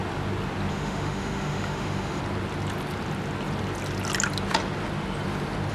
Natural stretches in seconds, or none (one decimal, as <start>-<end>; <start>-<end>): 0.0-0.7; 2.2-5.7